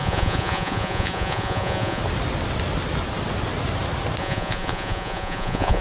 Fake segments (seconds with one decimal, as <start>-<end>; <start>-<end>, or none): 0.0-2.0; 4.2-5.8